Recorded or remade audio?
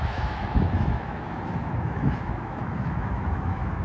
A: remade